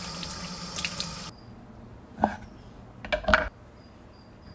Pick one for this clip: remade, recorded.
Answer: recorded